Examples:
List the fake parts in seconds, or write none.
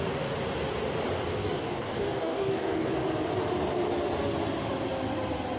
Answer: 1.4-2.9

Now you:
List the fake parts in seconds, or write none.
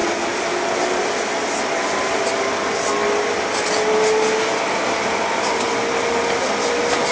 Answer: none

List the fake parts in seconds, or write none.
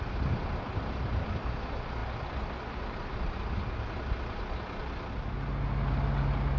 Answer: none